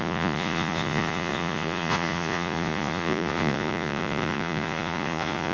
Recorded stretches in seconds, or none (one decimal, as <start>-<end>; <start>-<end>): none